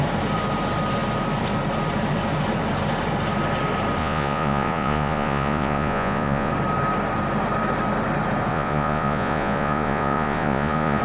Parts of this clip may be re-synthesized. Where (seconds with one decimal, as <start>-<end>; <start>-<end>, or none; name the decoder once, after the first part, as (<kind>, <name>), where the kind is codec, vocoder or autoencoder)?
4.0-6.5 (vocoder, Vocos); 8.5-11.0